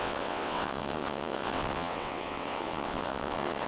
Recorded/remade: remade